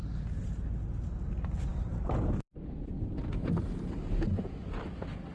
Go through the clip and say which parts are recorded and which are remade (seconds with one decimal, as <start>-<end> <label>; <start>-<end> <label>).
0.0-5.3 recorded